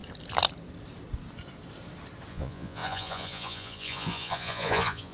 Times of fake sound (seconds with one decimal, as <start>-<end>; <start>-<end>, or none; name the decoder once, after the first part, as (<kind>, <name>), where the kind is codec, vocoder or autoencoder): 2.3-5.1 (vocoder, Vocos)